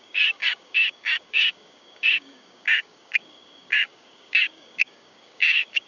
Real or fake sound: fake